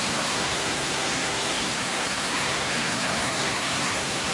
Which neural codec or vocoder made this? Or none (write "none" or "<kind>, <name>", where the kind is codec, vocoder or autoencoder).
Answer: codec, SNAC